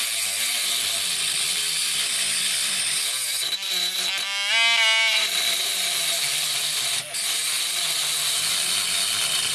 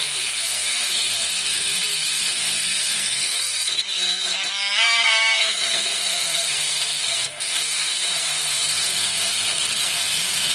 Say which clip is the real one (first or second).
first